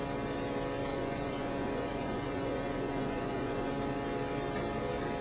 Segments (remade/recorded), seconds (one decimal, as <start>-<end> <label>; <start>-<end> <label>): 0.0-0.9 recorded; 0.9-3.7 remade; 3.7-5.2 recorded